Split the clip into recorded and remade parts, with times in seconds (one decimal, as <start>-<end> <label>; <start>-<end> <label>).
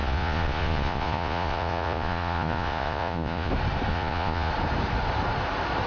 0.0-3.5 remade; 3.5-3.9 recorded; 3.9-4.5 remade; 4.5-5.9 recorded